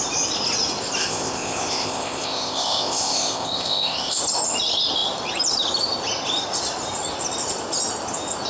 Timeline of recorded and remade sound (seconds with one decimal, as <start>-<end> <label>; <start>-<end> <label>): 0.0-1.0 recorded; 1.0-4.2 remade; 4.2-8.5 recorded